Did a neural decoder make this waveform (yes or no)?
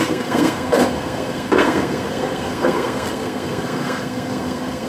yes